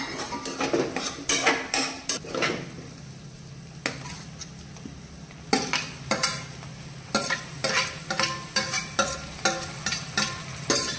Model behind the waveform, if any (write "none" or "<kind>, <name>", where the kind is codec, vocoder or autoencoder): none